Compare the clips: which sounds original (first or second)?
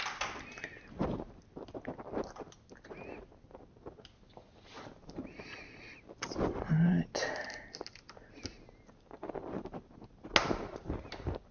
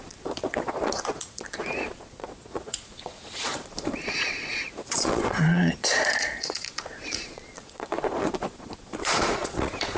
first